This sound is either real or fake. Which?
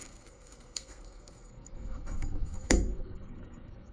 fake